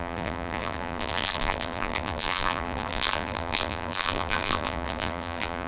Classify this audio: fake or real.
fake